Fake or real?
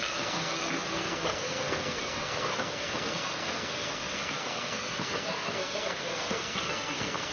fake